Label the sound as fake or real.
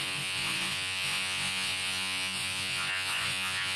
fake